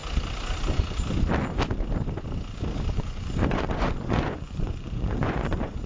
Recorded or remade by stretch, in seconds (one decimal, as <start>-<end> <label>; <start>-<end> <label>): 0.0-2.9 recorded; 2.9-5.9 remade